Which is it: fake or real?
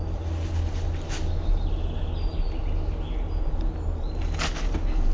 real